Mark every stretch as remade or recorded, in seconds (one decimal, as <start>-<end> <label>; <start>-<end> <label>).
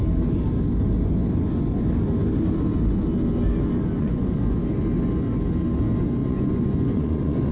0.0-4.0 recorded; 4.0-4.6 remade; 4.6-6.2 recorded; 6.2-7.5 remade